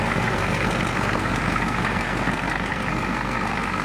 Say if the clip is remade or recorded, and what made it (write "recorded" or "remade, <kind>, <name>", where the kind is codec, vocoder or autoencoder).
remade, codec, SNAC